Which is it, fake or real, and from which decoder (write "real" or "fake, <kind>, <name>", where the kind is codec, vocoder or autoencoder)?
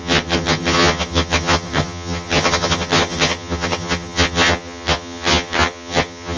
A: fake, vocoder, HiFi-GAN